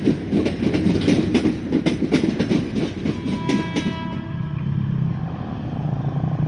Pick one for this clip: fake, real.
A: real